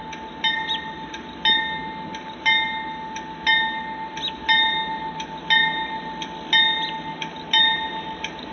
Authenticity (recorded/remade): recorded